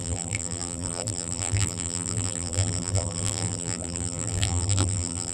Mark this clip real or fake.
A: fake